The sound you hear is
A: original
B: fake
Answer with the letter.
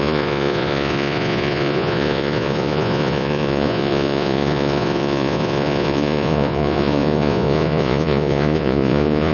B